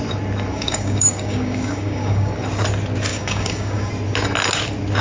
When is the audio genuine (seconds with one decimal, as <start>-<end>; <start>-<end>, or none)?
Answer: 0.0-0.5; 2.3-3.1; 3.9-5.0